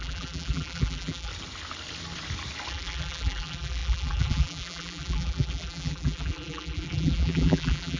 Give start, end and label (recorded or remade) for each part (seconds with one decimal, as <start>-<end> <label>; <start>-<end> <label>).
0.0-1.3 remade; 1.3-2.7 recorded; 2.7-8.0 remade